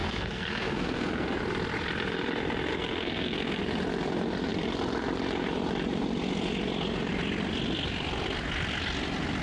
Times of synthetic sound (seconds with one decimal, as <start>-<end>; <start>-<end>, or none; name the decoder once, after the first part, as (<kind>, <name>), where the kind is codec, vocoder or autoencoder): 0.0-1.4 (codec, SNAC); 2.7-3.6